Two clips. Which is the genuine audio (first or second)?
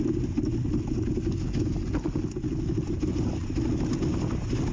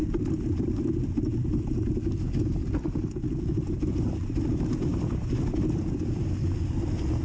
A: first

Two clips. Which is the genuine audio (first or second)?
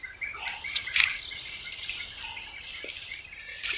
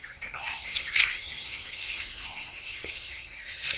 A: first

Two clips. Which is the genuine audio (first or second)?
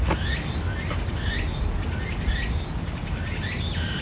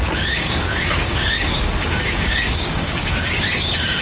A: first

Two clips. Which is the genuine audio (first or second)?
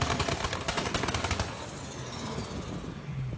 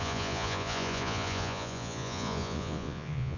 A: first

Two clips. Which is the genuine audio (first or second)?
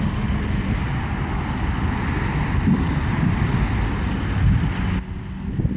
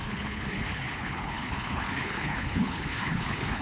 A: first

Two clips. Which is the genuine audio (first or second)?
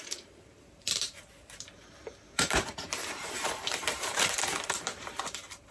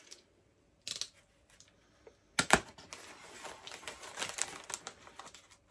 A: second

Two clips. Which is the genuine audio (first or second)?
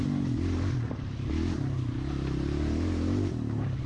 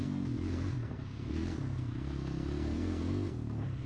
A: first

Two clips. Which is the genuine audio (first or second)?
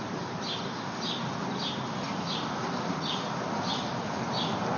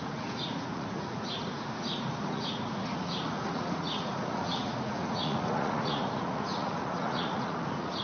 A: first